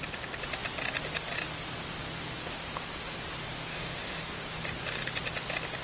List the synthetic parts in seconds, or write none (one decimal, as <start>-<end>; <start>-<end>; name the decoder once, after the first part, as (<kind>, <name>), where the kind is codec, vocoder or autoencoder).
3.7-4.2 (autoencoder, DAC-VAE)